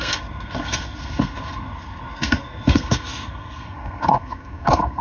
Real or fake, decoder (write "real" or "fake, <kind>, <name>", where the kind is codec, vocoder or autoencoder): fake, codec, SNAC